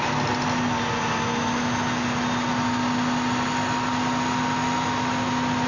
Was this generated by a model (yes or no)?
no